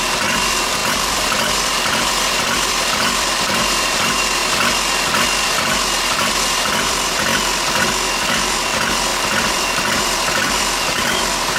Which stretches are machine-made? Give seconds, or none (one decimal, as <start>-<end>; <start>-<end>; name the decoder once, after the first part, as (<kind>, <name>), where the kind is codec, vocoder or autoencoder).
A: 0.0-4.4 (vocoder, BigVGAN v2); 5.4-7.3; 8.3-11.6